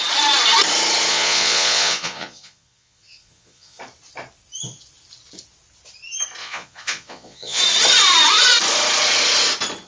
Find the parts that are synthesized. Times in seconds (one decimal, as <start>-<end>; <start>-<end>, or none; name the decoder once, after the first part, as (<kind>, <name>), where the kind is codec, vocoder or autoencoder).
1.1-3.8 (vocoder, Vocos); 6.4-7.6